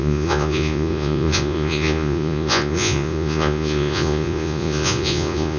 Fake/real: fake